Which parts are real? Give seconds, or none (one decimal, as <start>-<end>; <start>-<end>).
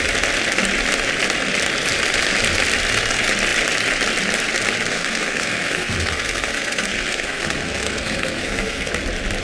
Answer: 0.0-4.9; 8.9-9.4